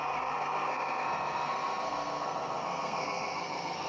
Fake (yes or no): yes